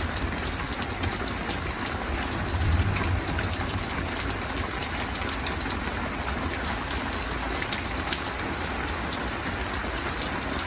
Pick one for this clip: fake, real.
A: real